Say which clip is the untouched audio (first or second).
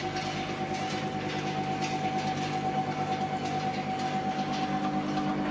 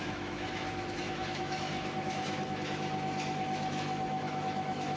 first